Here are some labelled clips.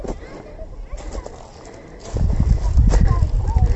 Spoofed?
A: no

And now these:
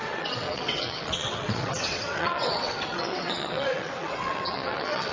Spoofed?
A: yes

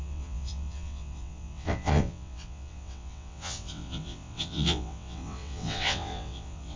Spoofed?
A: yes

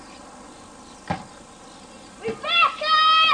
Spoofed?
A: no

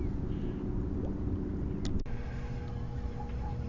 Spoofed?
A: no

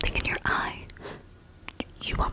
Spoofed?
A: no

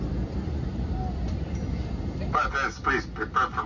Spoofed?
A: no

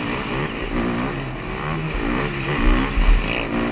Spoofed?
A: no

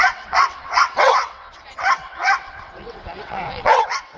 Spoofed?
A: yes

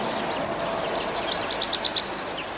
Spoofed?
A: no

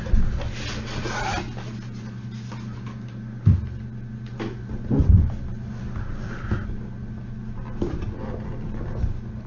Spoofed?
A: no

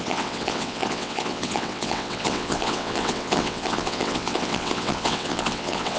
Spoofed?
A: yes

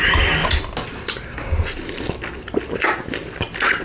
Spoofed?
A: no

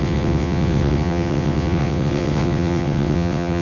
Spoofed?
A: yes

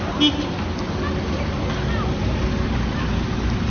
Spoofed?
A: no